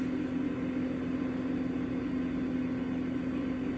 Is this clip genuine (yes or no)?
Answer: yes